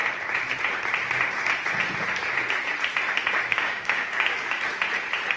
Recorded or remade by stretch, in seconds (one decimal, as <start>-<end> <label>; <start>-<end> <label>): 0.0-3.5 recorded; 3.5-4.6 remade; 4.6-5.4 recorded